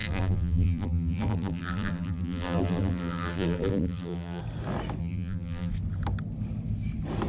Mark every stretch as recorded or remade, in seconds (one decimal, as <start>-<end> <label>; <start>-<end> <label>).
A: 0.0-4.4 remade; 4.4-5.0 recorded; 5.0-5.7 remade; 5.7-7.3 recorded